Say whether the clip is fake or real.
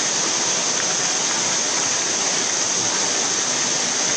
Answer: real